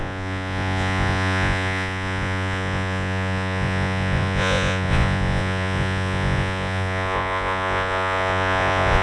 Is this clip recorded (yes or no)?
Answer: no